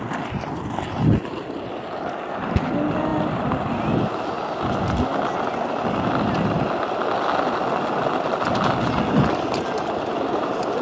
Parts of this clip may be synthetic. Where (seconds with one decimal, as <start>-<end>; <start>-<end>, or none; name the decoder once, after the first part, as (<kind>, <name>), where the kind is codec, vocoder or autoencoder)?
none

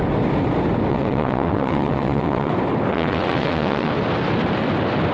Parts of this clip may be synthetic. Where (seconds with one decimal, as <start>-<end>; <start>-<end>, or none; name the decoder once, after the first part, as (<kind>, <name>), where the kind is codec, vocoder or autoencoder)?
0.9-2.5 (vocoder, WaveNeXt); 2.9-3.9

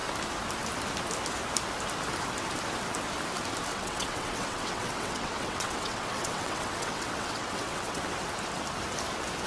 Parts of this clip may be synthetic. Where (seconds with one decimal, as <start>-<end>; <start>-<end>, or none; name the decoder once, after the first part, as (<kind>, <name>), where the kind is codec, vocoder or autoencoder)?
3.7-8.0 (vocoder, WaveNeXt)

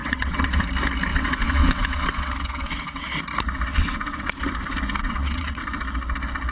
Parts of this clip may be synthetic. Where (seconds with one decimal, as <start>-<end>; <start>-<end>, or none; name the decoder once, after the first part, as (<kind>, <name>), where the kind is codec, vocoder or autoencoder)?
0.0-0.6 (vocoder, WaveNeXt); 1.1-3.2; 3.7-4.3; 5.0-5.6

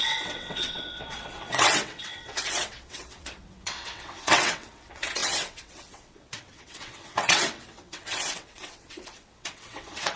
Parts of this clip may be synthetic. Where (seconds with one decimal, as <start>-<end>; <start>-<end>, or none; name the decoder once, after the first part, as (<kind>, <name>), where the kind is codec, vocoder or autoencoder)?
0.0-10.2 (vocoder, WaveNeXt)

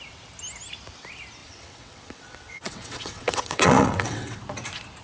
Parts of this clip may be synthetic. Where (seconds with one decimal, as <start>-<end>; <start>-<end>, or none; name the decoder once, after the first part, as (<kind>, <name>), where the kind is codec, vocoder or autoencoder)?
1.4-4.4 (vocoder, WaveNeXt)